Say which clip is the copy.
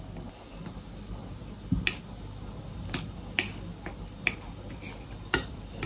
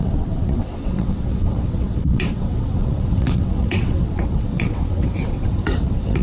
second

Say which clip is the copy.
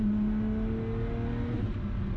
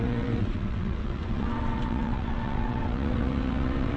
second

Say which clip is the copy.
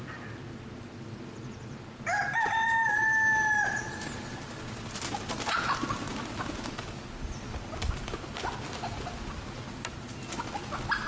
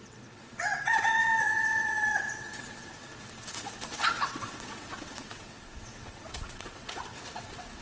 second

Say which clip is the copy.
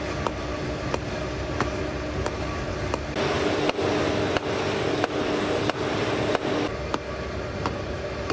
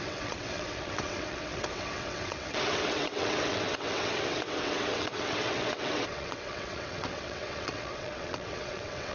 second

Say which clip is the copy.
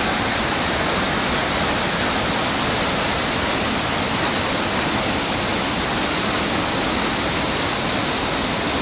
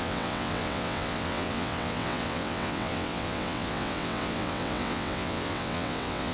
second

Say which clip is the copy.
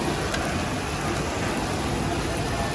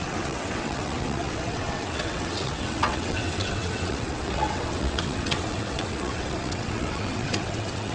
second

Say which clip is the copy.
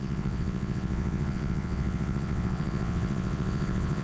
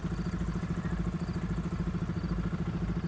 first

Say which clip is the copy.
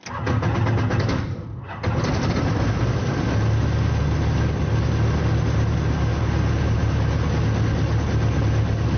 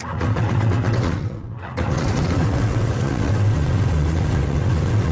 second